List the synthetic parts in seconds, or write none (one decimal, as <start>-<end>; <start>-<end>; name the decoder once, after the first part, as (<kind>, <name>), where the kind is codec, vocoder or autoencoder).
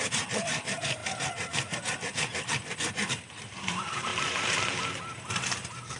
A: 0.0-1.0 (vocoder, BigVGAN v2); 3.1-4.1; 5.0-6.0